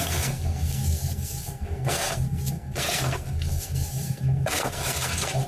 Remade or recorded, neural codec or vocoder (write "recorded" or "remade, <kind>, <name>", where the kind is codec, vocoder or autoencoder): remade, codec, SNAC